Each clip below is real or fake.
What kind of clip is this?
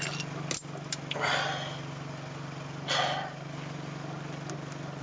real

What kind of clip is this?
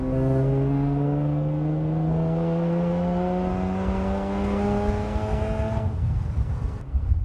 fake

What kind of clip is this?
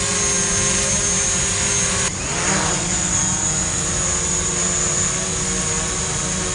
real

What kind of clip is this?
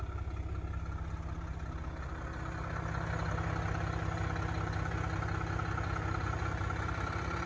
real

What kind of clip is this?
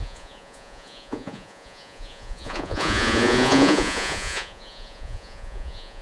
fake